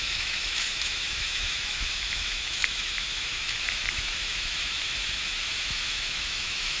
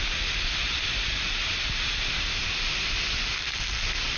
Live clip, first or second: second